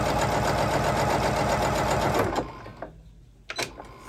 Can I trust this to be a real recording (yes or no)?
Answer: yes